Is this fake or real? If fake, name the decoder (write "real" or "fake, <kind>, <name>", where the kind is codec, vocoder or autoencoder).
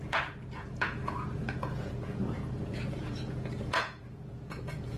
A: fake, vocoder, Vocos